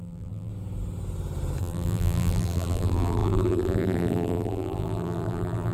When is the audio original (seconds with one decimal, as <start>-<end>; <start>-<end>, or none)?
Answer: 0.5-1.6